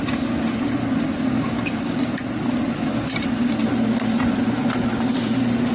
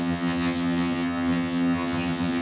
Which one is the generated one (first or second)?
second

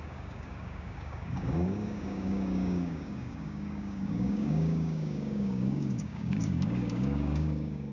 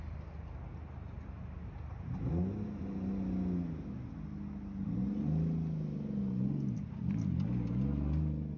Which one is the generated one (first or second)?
first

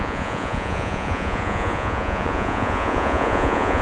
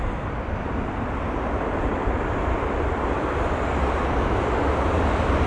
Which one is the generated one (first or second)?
first